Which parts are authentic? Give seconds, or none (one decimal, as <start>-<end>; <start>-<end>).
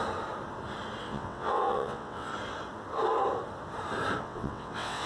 0.0-1.0; 2.3-4.2